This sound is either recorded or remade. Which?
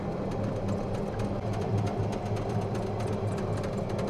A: recorded